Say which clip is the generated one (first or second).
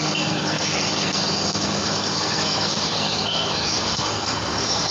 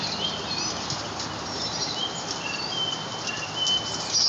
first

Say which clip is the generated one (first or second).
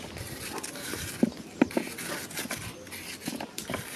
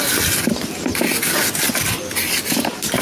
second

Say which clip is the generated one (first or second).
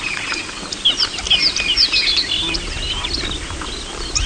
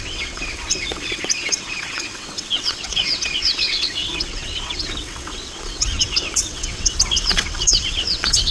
second